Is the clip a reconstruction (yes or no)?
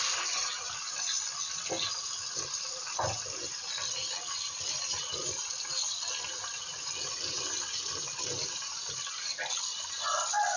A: no